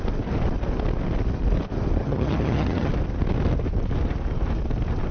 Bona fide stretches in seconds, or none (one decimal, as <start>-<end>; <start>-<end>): 0.0-2.0; 2.9-5.1